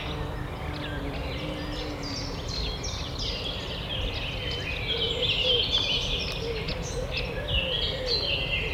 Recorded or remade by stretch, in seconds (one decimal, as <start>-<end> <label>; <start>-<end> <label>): 0.0-8.7 recorded